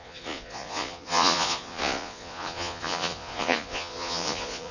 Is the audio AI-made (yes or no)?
yes